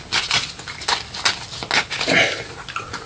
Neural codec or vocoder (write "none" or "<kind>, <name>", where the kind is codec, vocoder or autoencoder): none